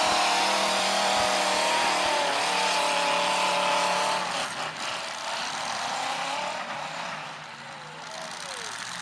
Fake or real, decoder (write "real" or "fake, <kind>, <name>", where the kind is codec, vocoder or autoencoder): real